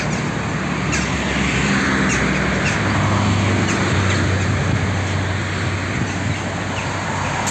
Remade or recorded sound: recorded